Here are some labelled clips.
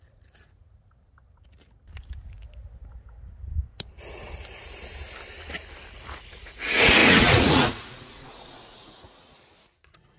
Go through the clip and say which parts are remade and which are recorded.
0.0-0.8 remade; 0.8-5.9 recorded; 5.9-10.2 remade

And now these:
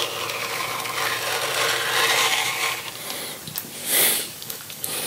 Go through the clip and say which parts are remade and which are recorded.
0.0-0.4 recorded; 0.4-0.9 remade; 0.9-2.2 recorded; 2.2-2.8 remade; 2.8-3.8 recorded; 3.8-5.1 remade